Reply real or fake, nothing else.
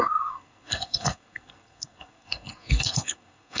fake